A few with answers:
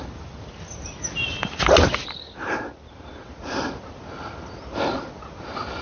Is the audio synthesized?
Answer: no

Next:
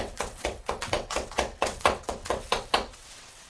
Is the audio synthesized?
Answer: yes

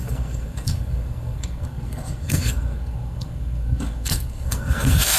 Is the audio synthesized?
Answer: yes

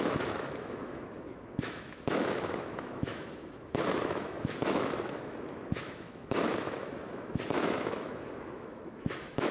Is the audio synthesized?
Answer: yes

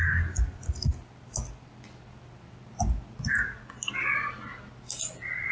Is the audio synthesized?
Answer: no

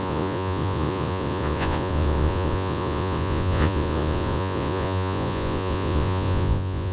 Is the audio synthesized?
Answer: yes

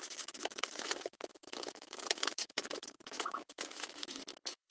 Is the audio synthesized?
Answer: yes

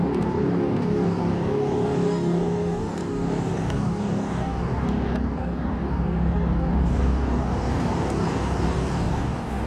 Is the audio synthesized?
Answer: yes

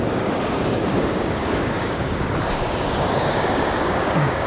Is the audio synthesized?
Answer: yes